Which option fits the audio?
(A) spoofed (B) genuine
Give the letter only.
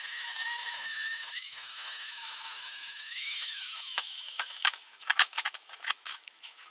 A